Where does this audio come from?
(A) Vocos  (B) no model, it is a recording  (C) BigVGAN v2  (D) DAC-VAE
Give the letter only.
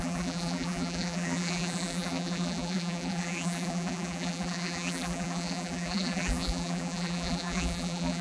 C